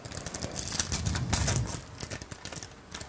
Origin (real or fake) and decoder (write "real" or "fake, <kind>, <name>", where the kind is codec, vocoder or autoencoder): real